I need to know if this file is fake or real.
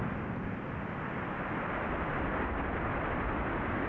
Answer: real